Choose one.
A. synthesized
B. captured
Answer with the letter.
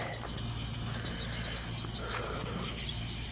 B